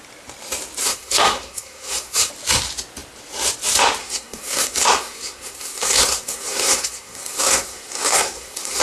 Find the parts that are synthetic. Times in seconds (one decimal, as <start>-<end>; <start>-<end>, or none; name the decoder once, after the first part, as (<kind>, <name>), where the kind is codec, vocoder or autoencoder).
0.8-2.3 (codec, SNAC); 4.0-8.8